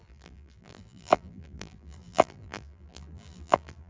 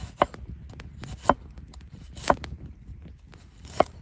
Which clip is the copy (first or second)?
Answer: first